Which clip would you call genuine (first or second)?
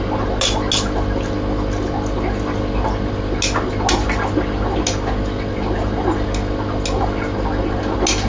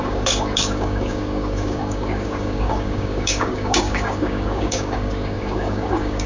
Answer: first